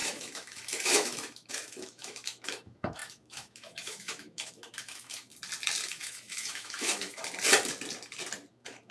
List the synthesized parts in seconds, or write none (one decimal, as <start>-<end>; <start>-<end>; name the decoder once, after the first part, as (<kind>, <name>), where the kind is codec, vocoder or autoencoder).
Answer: 0.0-5.3 (autoencoder, DAC-VAE); 5.9-7.2; 8.5-8.9